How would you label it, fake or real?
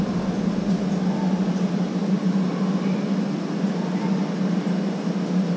real